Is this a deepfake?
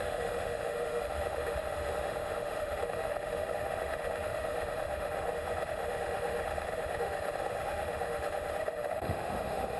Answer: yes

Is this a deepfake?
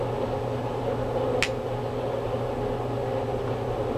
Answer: no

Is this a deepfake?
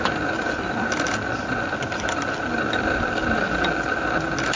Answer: no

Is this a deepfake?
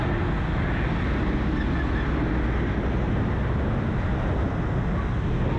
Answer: no